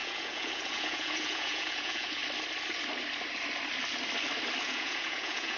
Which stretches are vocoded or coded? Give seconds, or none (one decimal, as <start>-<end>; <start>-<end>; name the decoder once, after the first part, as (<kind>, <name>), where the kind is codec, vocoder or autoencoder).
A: 0.0-2.2 (vocoder, Vocos); 4.6-5.6